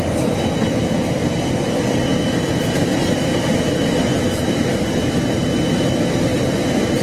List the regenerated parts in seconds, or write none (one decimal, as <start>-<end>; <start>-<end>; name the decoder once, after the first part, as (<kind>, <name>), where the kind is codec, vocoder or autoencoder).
0.0-7.0 (vocoder, BigVGAN v2)